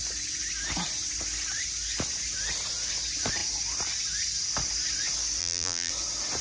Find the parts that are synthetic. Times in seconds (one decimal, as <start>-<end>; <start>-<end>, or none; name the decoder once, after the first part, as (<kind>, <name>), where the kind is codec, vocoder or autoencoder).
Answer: 5.4-5.9 (vocoder, BigVGAN v2)